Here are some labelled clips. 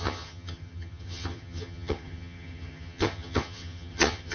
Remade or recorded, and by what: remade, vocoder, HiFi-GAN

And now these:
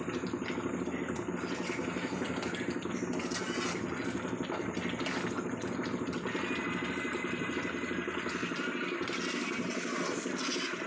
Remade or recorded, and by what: recorded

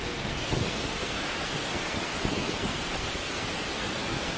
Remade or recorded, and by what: remade, codec, SNAC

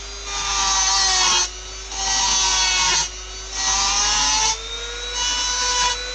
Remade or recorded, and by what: recorded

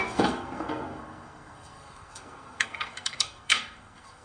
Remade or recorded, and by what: remade, codec, SNAC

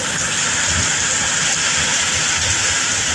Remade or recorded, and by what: recorded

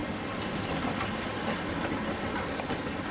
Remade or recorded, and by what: recorded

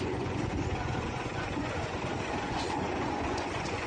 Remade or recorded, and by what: remade, vocoder, Vocos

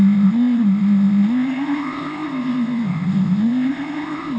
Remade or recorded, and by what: remade, codec, ZipCodec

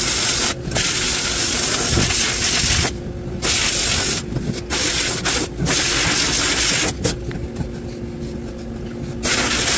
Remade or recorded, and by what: recorded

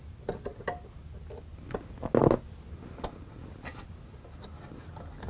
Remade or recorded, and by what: recorded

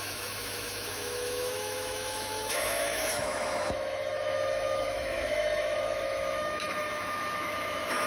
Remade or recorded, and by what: remade, autoencoder, DAC-VAE